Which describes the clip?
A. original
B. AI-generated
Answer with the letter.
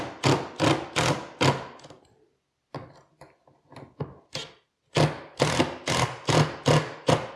A